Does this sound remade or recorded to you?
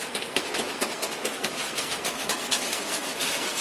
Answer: remade